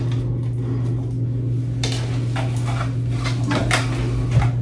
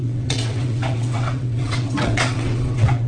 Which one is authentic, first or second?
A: first